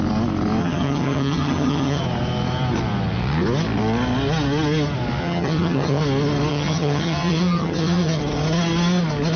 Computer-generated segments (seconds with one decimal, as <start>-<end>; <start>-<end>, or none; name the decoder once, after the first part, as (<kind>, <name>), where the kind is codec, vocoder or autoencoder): 0.6-2.0 (vocoder, HiFi-GAN); 5.2-6.0; 6.5-8.2